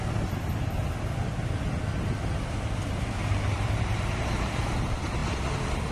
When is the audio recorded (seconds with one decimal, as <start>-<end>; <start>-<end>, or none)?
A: 0.0-2.3; 4.5-5.9